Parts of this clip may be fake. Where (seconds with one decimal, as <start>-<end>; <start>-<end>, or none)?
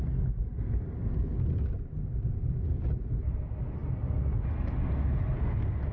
none